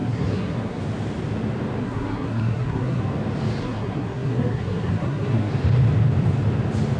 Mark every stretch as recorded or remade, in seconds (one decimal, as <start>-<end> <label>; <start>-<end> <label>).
0.0-0.8 remade; 0.8-1.8 recorded; 1.8-3.0 remade; 3.0-3.6 recorded; 3.6-5.5 remade; 5.5-7.0 recorded